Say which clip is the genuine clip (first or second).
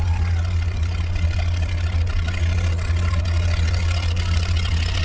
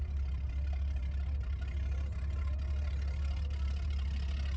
second